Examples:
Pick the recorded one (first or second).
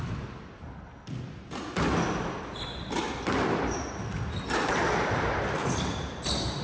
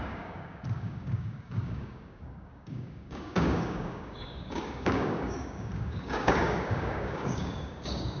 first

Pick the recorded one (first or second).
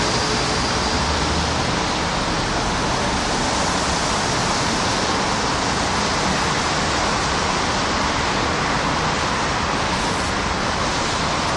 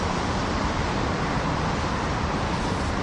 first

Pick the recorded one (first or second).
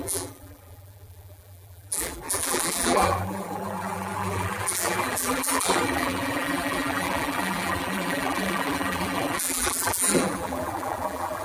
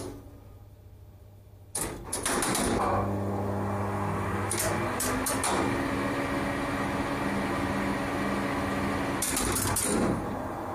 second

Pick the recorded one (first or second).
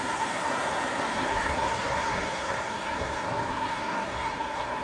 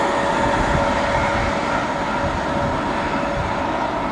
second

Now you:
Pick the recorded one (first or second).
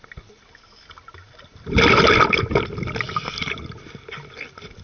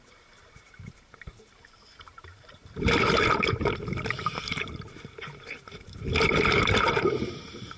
first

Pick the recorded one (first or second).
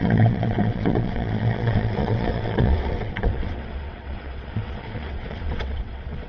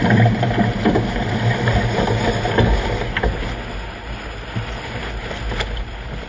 second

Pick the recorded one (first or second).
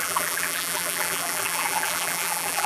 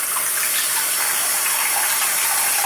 second